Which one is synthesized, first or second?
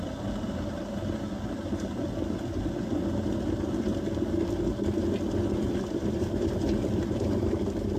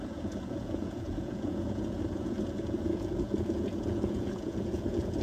second